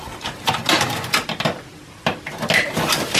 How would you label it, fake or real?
real